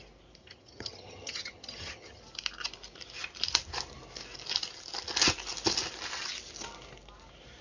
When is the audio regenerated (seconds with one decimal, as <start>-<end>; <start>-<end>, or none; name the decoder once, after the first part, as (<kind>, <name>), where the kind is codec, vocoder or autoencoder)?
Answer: 0.4-2.2 (vocoder, HiFi-GAN)